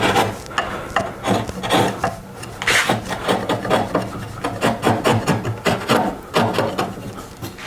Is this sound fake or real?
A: real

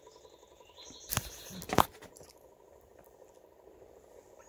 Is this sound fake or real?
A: real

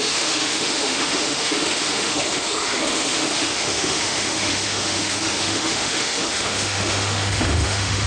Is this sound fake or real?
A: fake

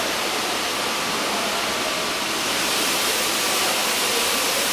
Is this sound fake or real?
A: real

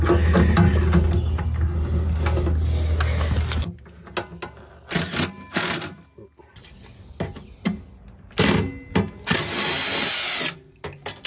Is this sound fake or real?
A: real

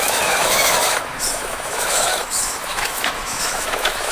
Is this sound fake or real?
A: fake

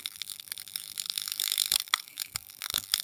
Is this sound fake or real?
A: fake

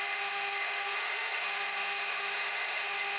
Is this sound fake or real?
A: fake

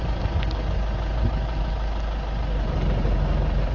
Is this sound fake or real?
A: real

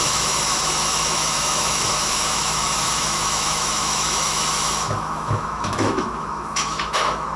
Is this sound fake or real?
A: fake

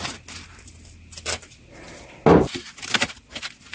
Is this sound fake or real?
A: real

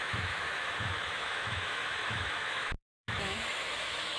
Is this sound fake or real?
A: fake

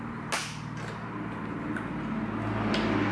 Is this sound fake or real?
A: real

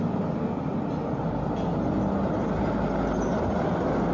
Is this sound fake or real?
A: real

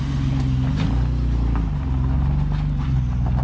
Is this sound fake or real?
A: real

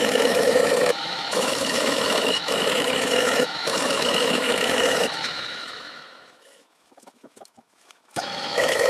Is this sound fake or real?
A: fake